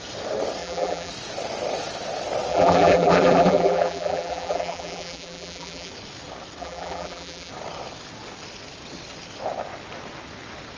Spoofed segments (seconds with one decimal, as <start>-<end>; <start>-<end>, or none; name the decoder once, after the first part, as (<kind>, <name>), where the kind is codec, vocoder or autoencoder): 0.6-1.1 (vocoder, BigVGAN v2); 2.5-5.9; 6.6-7.5